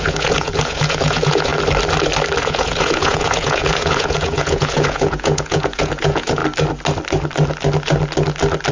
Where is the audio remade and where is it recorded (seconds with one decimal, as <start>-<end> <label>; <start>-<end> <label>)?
0.0-1.5 remade; 1.5-2.4 recorded; 2.4-6.4 remade; 6.4-8.7 recorded